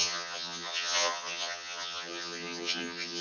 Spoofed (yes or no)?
yes